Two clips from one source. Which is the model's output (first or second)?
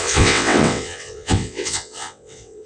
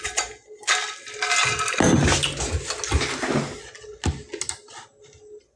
first